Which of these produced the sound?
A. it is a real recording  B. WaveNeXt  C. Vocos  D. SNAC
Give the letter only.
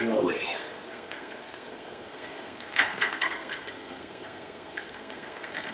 D